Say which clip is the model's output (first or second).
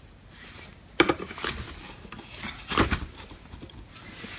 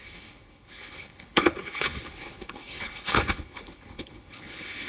second